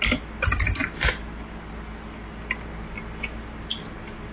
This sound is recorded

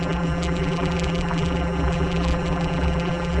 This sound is remade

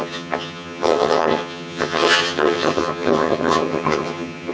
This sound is remade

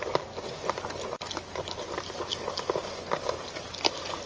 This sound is recorded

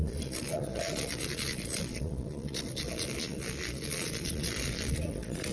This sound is remade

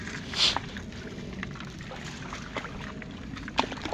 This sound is recorded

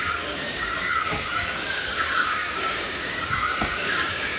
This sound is remade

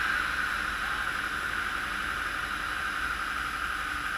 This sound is recorded